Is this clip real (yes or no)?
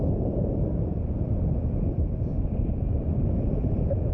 no